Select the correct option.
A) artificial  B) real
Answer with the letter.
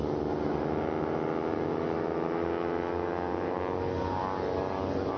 B